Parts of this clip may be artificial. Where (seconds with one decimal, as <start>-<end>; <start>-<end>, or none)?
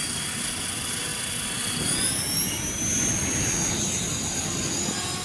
none